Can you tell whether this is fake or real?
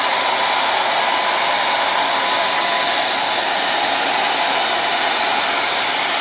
real